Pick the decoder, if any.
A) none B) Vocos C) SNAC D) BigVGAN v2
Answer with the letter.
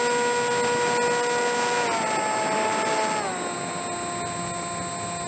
A